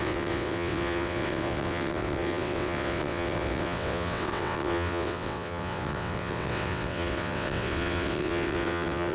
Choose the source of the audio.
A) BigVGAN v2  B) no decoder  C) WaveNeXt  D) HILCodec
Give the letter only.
C